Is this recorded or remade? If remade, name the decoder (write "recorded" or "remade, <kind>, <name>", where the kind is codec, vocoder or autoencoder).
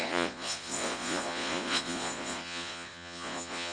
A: remade, vocoder, Vocos